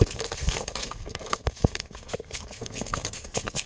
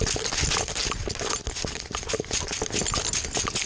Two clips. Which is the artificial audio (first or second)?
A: first